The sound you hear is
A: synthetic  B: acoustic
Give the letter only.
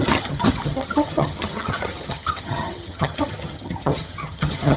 A